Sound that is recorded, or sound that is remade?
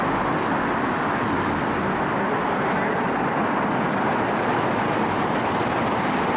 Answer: recorded